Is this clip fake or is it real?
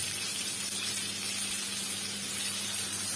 real